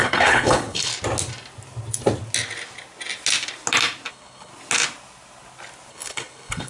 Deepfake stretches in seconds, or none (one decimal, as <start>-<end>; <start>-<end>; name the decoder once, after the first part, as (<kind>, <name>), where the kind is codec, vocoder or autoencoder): 0.0-0.9 (codec, HILCodec); 4.1-4.5; 5.9-6.7